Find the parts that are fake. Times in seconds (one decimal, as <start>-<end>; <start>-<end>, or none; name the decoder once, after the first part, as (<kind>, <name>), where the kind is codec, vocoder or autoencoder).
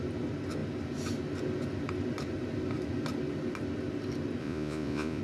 4.4-5.2 (vocoder, Vocos)